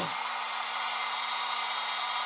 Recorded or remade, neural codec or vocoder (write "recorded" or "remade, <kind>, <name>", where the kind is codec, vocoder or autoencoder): recorded